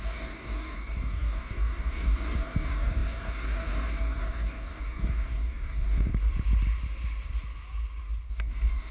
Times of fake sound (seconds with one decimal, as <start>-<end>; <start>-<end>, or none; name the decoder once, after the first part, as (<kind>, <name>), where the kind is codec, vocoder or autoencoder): 0.0-6.1 (codec, DAC); 8.3-8.9